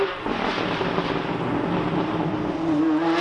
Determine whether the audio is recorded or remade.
recorded